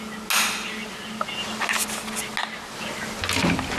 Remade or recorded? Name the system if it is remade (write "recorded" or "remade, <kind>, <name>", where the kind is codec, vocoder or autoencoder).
recorded